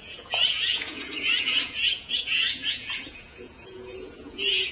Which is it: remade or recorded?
remade